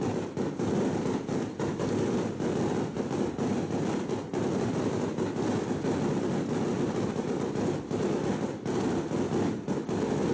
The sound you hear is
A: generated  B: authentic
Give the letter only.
B